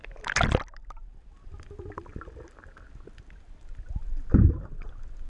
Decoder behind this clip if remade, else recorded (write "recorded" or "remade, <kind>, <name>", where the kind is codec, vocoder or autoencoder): recorded